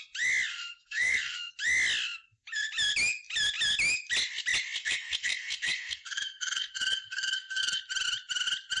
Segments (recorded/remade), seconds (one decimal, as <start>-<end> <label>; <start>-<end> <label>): 0.0-0.5 recorded; 0.5-1.5 remade; 1.5-4.8 recorded; 4.8-7.8 remade; 7.8-8.8 recorded